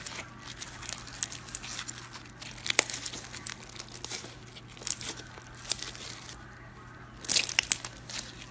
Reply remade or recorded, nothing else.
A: recorded